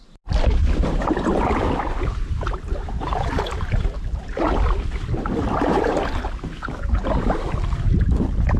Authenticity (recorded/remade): recorded